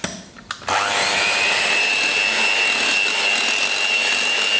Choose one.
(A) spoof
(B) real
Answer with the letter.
B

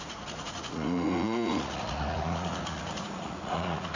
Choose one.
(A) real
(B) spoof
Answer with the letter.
B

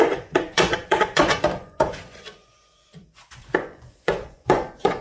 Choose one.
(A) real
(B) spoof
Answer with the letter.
B